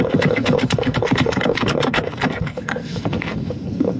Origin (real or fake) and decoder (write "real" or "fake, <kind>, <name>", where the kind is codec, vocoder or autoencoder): fake, codec, SNAC